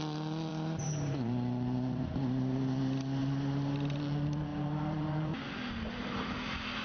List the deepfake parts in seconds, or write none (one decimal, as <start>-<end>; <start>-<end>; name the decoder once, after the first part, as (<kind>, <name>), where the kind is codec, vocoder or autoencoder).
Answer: 0.5-2.7 (vocoder, BigVGAN v2); 3.2-4.0; 4.5-5.3